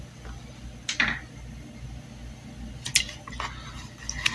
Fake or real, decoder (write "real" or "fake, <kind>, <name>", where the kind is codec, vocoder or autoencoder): real